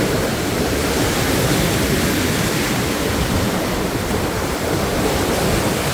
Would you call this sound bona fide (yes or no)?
yes